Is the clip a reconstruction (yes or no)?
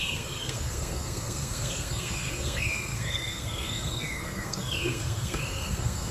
yes